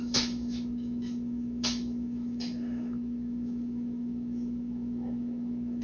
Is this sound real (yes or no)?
no